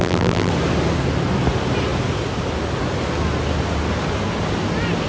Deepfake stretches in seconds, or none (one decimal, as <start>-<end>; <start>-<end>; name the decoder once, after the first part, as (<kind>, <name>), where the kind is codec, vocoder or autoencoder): 0.0-0.5 (vocoder, BigVGAN v2)